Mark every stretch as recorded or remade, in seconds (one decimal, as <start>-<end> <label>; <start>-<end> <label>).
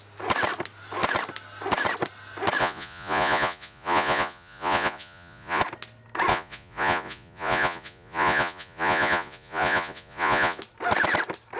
0.0-2.6 recorded; 2.6-5.6 remade; 5.6-6.3 recorded; 6.3-10.6 remade; 10.6-11.6 recorded